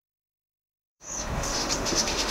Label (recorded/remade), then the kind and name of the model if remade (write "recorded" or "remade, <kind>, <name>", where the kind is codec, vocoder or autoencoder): remade, autoencoder, DAC-VAE